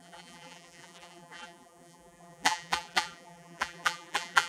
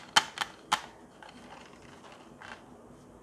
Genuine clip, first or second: second